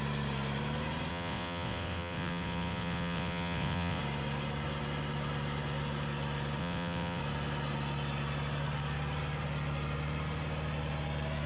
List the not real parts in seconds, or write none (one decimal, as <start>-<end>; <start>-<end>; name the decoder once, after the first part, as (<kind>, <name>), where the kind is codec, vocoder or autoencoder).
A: 1.1-4.0 (vocoder, WaveNeXt); 6.6-7.2